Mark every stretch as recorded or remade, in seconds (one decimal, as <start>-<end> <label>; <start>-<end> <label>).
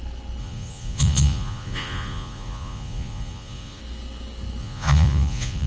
0.0-0.4 recorded; 0.4-3.8 remade; 3.8-4.6 recorded; 4.6-5.7 remade